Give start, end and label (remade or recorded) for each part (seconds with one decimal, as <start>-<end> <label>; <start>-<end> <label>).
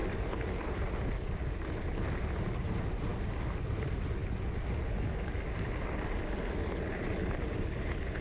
0.0-8.2 recorded